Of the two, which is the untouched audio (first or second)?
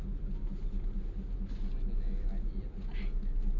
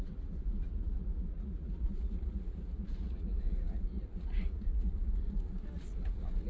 first